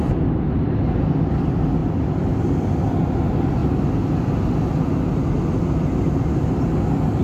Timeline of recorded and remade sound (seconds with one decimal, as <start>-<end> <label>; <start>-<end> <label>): 0.0-7.2 recorded